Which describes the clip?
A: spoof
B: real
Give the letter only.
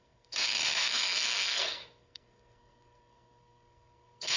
A